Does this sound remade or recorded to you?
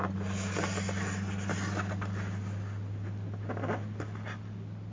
recorded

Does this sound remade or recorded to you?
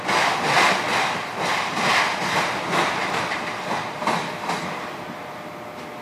recorded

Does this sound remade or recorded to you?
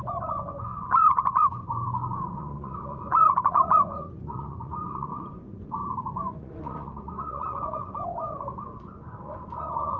remade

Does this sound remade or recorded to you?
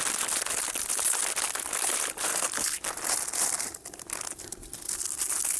recorded